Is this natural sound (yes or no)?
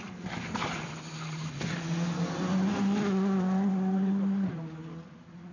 yes